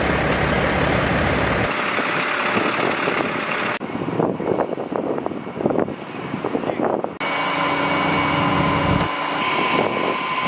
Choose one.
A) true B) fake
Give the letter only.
A